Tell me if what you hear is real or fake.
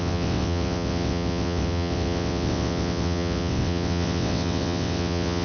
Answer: fake